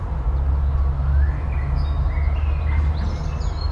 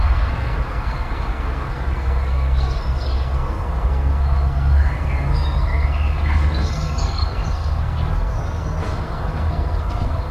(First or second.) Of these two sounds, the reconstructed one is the second